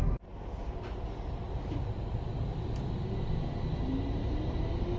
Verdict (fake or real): real